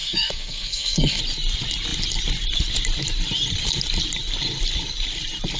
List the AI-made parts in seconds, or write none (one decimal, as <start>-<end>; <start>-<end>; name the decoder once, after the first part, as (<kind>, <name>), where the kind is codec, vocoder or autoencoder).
0.0-1.2 (codec, SNAC)